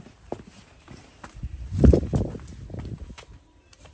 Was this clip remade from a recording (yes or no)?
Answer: yes